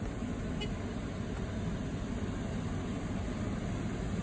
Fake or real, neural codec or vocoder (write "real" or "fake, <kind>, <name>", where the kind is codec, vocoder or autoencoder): real